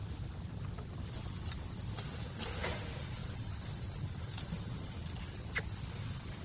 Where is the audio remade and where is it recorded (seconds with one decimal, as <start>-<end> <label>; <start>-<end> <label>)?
0.0-3.2 recorded; 3.2-4.9 remade; 4.9-6.4 recorded